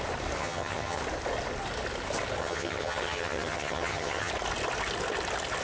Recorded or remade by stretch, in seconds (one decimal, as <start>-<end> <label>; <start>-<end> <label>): 0.0-0.4 recorded; 0.4-1.0 remade; 1.0-2.4 recorded; 2.4-4.3 remade; 4.3-5.6 recorded